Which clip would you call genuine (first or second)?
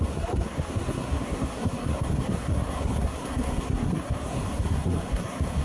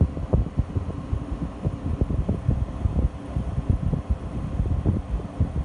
second